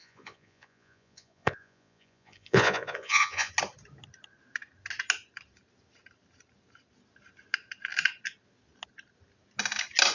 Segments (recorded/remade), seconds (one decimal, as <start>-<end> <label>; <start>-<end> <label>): 0.0-3.5 remade; 3.5-10.1 recorded